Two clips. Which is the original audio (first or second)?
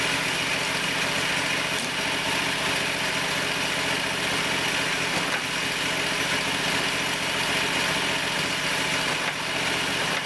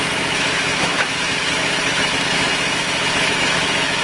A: first